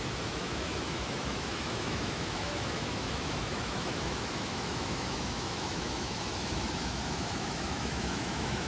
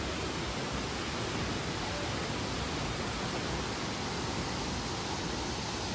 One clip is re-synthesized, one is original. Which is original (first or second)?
second